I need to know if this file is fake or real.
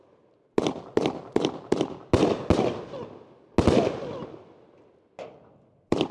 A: real